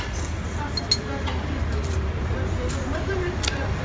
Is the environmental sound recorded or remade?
recorded